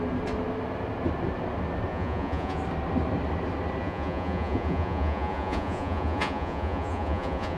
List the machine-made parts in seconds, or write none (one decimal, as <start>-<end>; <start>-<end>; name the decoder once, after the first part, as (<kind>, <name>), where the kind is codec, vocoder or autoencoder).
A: 1.9-2.6 (vocoder, Vocos); 3.8-7.6

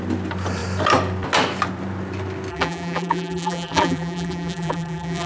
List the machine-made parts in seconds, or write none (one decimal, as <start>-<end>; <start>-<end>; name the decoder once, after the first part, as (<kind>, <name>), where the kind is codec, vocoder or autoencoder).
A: 2.5-5.3 (vocoder, BigVGAN v2)

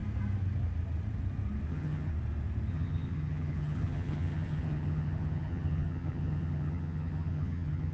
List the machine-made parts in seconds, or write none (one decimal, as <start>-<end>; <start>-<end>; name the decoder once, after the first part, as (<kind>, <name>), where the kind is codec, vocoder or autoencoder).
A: 1.7-2.1 (vocoder, HiFi-GAN); 2.7-7.9